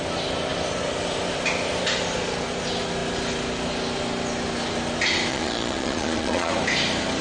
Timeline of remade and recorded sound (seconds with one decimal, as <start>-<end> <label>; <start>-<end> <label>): 0.0-5.3 recorded; 5.3-6.5 remade; 6.5-7.2 recorded